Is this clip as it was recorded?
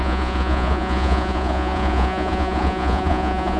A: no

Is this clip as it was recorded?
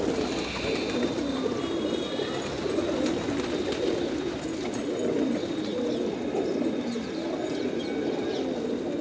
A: yes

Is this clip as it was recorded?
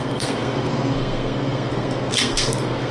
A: no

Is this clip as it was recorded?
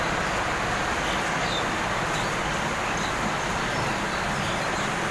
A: yes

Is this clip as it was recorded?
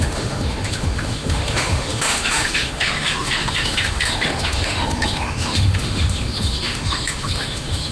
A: no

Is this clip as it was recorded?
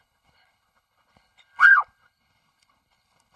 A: no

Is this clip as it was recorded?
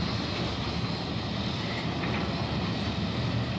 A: yes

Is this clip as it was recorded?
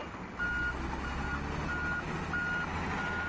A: yes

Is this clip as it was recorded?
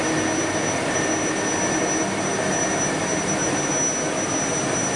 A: yes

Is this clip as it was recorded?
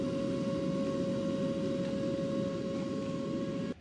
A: yes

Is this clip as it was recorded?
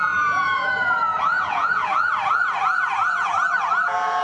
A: no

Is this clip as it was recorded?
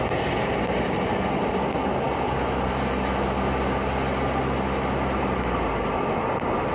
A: yes